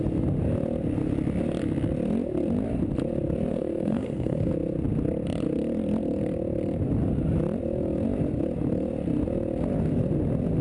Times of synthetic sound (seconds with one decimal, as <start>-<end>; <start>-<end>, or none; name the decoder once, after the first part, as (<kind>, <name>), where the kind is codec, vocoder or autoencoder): 3.5-4.5 (codec, SNAC)